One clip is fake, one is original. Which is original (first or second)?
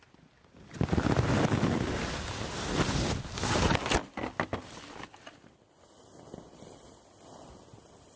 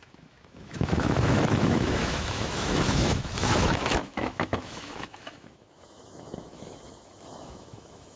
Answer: first